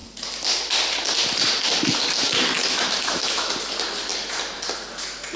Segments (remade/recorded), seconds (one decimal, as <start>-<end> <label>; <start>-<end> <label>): 0.0-2.6 recorded; 2.6-3.5 remade; 3.5-5.4 recorded